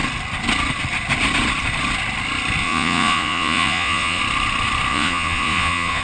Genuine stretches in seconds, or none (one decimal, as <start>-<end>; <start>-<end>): 0.0-2.6; 4.2-4.9